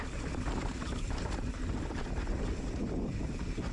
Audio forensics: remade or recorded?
remade